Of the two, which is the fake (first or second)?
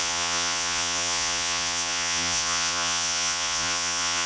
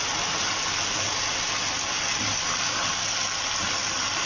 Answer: first